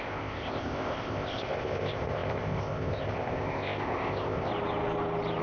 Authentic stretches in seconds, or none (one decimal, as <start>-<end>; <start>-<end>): 4.5-5.4